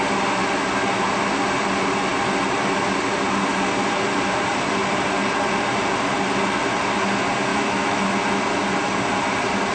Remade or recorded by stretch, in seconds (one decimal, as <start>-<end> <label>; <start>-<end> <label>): 0.0-7.5 recorded; 7.5-8.0 remade; 8.0-9.7 recorded